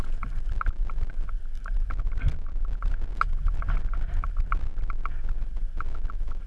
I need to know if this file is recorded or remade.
recorded